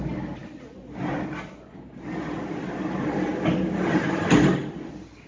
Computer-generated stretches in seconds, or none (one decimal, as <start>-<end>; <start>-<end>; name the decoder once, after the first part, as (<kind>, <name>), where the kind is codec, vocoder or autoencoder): none